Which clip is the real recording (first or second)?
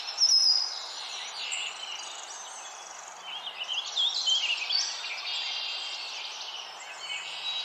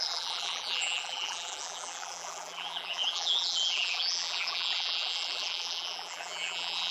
first